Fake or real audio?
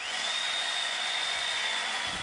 fake